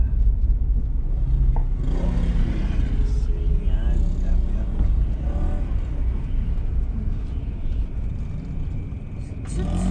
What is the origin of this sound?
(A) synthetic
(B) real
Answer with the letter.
B